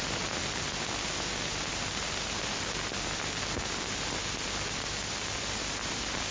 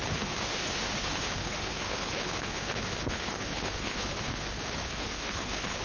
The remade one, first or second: second